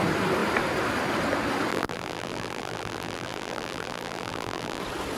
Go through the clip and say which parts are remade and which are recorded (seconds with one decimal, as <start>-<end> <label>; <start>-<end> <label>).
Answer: 0.0-1.7 recorded; 1.7-4.8 remade; 4.8-5.2 recorded